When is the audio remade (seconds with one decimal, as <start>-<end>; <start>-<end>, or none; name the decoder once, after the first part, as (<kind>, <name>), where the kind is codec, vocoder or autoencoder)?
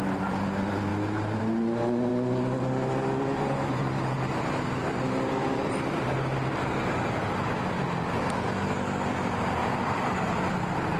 9.6-10.5 (vocoder, BigVGAN v2)